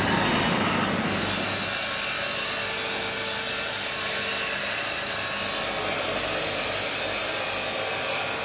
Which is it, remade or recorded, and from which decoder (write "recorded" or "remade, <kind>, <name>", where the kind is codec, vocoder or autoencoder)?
recorded